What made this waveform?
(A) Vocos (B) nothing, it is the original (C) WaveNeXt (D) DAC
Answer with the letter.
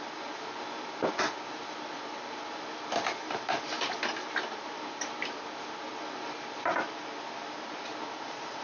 B